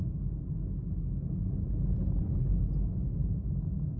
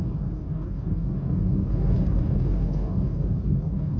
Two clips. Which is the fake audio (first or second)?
second